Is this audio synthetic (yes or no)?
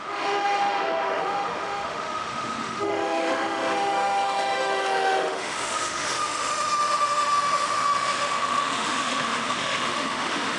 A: yes